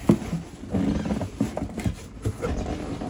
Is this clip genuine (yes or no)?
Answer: yes